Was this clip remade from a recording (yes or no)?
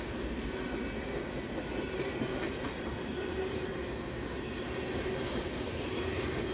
no